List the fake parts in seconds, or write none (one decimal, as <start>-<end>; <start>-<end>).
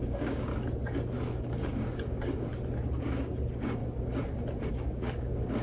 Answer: 0.0-0.5; 1.4-2.5; 3.0-3.8; 4.7-5.6